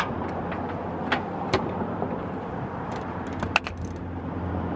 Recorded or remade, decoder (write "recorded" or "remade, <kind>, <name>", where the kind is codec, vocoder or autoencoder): recorded